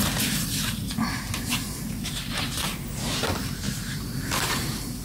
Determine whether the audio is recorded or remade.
remade